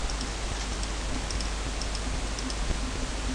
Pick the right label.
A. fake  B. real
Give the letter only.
B